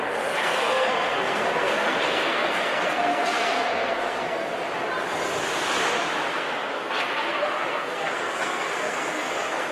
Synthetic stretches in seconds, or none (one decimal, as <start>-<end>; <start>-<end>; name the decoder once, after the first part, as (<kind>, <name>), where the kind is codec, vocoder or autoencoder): 0.0-4.5 (codec, SNAC); 6.3-9.7